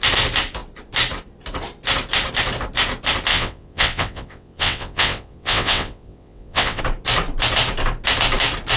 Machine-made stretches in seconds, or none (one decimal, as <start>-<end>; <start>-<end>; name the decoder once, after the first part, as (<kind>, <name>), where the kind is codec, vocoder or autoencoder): 3.3-6.8 (vocoder, WaveNeXt)